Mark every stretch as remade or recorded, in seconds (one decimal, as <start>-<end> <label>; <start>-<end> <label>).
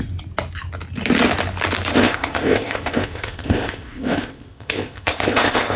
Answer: 0.0-1.9 recorded; 1.9-5.8 remade